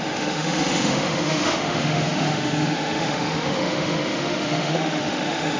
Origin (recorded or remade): remade